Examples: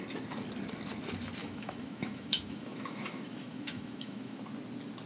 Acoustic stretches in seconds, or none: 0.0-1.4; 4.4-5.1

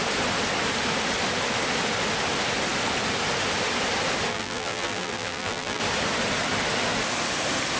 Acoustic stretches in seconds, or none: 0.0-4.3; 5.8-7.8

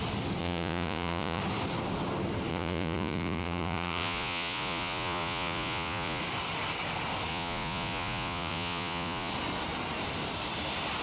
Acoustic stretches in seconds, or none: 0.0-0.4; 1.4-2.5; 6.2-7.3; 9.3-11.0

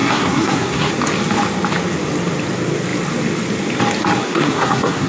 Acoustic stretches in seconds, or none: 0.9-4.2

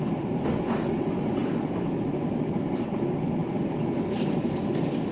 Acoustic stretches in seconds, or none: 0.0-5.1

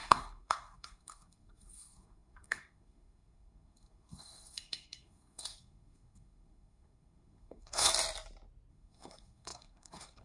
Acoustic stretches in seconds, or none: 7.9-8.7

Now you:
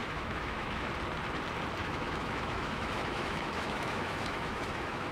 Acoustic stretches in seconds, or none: 0.9-1.8

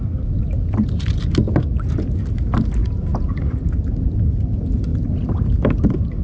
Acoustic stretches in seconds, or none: 0.0-2.8; 3.3-6.2